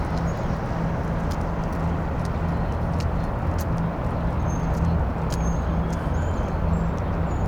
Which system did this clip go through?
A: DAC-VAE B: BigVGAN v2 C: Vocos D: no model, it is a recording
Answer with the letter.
D